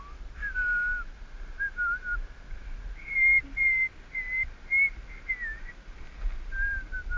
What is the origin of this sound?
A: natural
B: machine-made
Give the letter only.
A